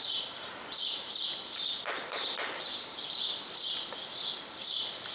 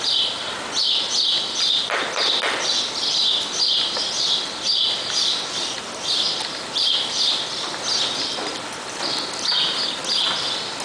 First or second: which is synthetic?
first